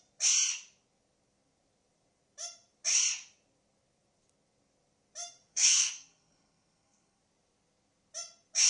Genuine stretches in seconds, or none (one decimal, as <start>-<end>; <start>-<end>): 0.0-5.5; 7.2-8.7